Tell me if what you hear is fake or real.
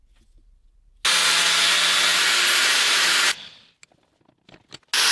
real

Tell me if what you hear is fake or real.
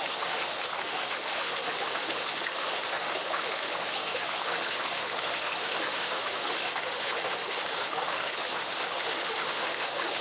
fake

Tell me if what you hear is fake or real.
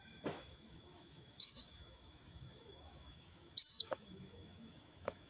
fake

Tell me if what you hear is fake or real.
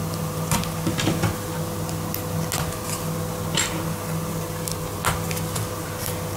real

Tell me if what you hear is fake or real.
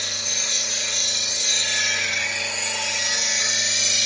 real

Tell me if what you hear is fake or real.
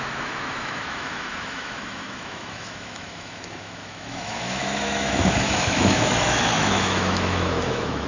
fake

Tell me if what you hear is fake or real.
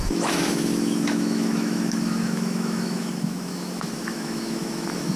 fake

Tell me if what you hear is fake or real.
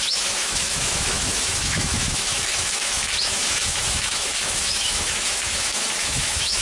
fake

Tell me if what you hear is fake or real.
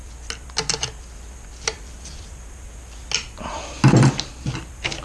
real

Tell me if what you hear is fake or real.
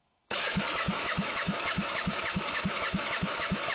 fake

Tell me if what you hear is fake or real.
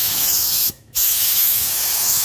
fake